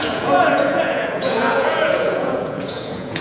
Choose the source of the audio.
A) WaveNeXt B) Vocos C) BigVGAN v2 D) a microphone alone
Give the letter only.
B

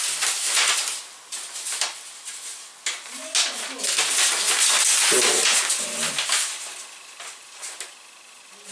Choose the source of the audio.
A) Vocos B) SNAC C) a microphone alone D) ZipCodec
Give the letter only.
C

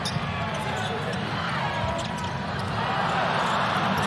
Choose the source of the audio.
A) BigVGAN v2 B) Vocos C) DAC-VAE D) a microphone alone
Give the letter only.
D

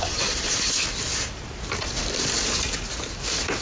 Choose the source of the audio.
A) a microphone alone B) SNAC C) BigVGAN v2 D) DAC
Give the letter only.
A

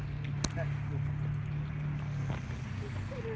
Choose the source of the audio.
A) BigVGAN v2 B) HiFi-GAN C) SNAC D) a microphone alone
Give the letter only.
D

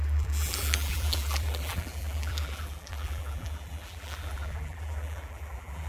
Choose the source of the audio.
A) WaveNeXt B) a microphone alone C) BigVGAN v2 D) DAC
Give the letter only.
C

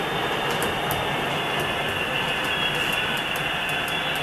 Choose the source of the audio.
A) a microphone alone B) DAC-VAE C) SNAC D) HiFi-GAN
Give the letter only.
A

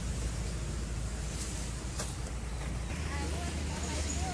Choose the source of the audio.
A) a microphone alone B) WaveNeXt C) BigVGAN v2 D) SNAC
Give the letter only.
A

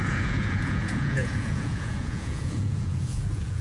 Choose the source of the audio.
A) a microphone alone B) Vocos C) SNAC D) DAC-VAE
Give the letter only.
B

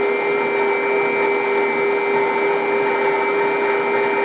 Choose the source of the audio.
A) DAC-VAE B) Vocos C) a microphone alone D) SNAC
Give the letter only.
C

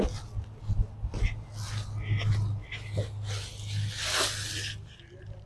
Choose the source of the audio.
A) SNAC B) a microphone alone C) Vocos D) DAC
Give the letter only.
B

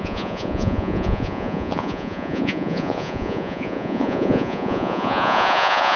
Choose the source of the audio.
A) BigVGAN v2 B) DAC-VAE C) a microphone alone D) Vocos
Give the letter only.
D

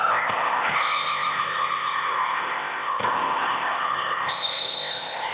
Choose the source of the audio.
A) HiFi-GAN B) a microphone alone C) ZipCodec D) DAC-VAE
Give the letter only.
C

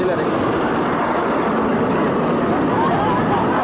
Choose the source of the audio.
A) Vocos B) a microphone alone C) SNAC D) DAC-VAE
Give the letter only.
B